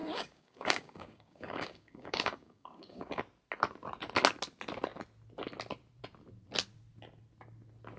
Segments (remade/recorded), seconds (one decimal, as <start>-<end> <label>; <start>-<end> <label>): 0.0-3.2 remade; 3.2-8.0 recorded